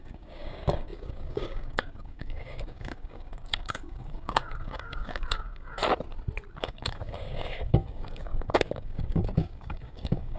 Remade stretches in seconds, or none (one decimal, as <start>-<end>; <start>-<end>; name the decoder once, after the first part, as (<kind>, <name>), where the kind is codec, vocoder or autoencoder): 0.0-5.8 (codec, DAC); 6.6-10.4